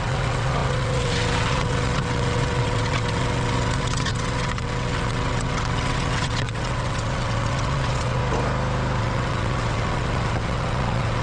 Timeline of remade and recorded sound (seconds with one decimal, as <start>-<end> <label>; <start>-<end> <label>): 0.0-8.2 remade; 8.2-9.0 recorded; 9.0-11.2 remade